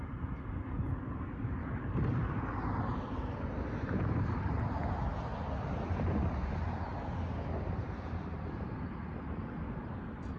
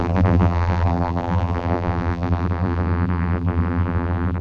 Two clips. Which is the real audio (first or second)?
first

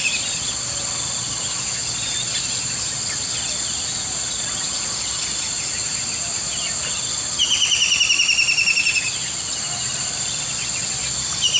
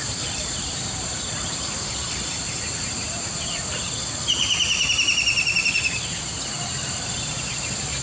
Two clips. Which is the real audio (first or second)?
first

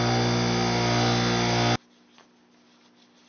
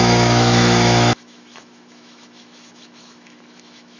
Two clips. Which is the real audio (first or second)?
first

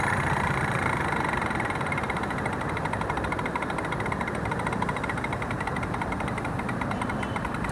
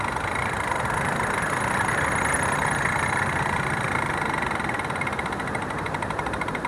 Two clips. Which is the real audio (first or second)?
second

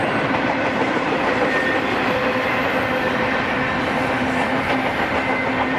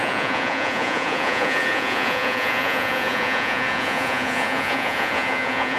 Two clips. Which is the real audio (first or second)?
first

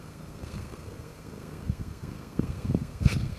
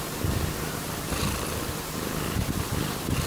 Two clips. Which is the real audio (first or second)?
second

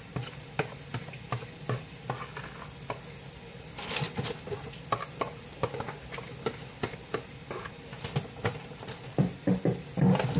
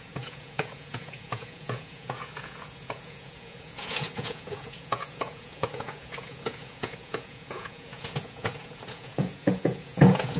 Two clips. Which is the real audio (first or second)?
first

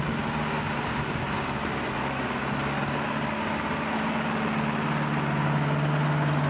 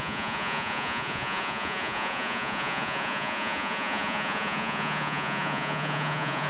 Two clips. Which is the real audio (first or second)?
first